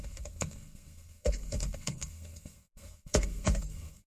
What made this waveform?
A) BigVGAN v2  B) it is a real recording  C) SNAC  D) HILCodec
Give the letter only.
C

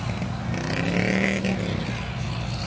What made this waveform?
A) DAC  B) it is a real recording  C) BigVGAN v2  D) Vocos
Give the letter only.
B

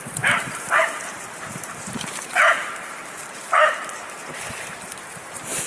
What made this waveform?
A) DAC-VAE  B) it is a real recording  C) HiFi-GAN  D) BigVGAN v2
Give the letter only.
D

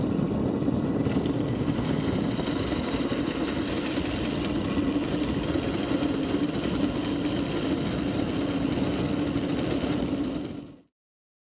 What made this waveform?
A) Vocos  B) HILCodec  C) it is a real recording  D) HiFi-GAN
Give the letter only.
C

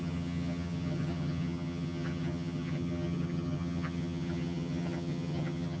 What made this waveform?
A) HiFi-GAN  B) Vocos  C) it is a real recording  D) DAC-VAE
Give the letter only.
A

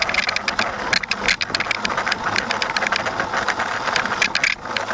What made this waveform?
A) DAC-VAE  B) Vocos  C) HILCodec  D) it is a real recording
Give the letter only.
D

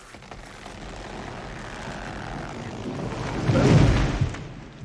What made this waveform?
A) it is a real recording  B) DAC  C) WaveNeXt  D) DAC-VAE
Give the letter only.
A